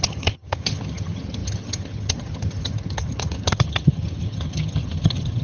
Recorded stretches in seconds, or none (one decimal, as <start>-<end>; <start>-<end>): none